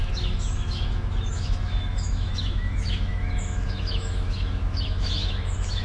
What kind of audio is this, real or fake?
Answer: fake